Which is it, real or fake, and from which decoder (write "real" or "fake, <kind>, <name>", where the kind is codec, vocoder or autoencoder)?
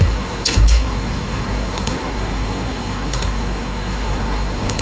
fake, codec, SNAC